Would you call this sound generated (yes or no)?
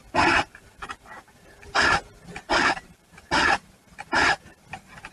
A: no